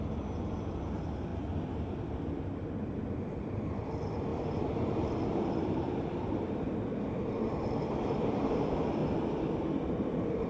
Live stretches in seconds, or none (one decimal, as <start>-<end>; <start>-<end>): 1.3-2.1; 4.3-5.0; 9.0-9.8